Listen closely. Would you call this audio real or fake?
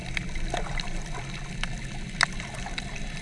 real